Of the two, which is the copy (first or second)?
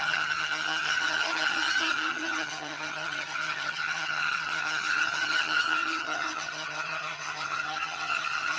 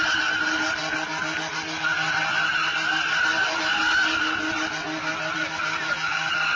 first